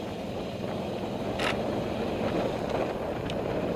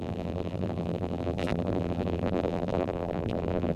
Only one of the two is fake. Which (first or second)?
second